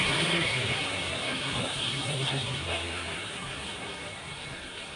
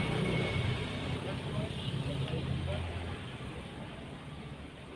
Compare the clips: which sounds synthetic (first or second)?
first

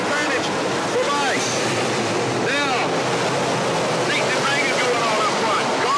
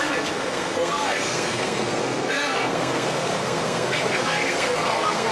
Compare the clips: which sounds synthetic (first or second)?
second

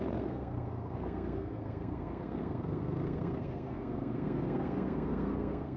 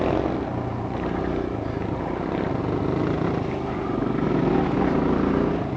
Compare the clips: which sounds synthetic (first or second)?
first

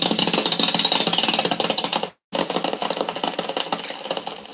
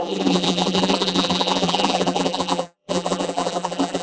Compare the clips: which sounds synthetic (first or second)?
second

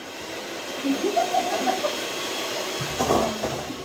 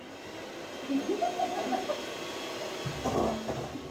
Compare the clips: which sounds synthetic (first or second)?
first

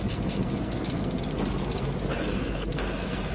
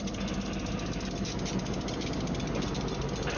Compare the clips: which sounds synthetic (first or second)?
first